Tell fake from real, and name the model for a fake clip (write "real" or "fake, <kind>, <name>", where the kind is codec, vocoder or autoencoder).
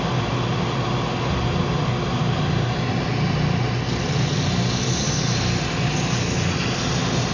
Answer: real